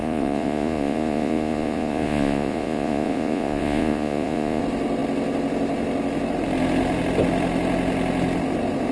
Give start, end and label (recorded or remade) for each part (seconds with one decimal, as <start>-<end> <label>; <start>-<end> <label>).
0.0-4.6 remade; 4.6-8.9 recorded